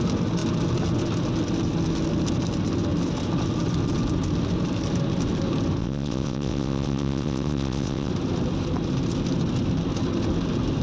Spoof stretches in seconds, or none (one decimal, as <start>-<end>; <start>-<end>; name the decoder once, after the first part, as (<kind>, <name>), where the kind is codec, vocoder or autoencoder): 5.8-8.1 (vocoder, WaveNeXt)